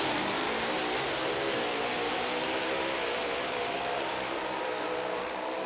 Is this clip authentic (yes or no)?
yes